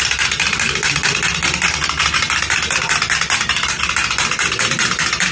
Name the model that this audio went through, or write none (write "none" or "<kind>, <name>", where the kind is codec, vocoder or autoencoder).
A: none